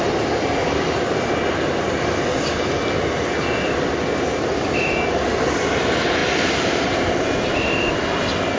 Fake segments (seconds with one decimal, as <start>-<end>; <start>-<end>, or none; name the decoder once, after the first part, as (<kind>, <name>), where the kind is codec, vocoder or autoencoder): none